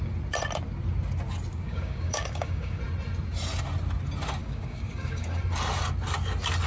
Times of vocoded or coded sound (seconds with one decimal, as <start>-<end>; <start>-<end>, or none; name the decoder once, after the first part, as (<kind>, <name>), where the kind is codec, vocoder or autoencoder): 1.5-2.8 (codec, DAC); 4.4-5.4